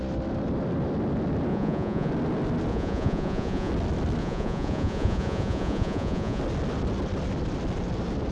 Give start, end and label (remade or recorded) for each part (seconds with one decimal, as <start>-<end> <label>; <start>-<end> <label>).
0.0-1.5 recorded; 1.5-2.1 remade; 2.1-2.7 recorded; 2.7-3.7 remade; 3.7-4.2 recorded; 4.2-6.4 remade; 6.4-8.3 recorded